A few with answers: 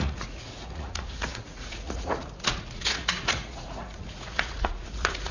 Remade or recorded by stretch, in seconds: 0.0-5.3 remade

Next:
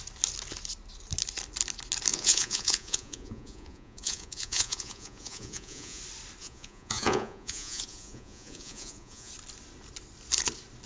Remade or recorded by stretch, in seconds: 0.0-2.1 recorded; 2.1-6.0 remade; 6.0-6.4 recorded; 6.4-9.3 remade; 9.3-10.9 recorded